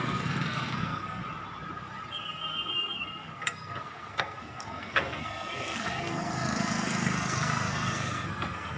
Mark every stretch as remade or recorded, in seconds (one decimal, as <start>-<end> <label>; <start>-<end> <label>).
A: 0.0-1.2 remade; 1.2-2.1 recorded; 2.1-8.8 remade